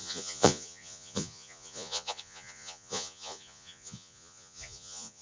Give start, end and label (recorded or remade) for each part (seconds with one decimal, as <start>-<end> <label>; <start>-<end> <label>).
0.0-5.2 remade